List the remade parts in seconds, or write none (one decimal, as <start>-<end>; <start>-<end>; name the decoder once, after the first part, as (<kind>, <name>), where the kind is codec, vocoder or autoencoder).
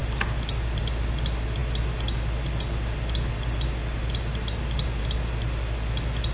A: none